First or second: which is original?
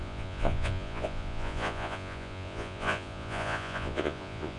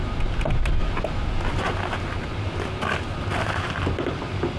second